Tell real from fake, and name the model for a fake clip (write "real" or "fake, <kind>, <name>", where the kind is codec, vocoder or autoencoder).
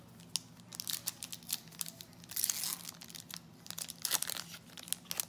real